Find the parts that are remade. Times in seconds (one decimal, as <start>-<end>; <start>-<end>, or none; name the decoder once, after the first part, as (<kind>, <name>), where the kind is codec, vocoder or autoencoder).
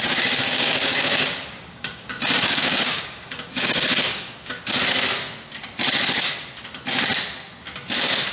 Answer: 0.0-4.6 (codec, DAC)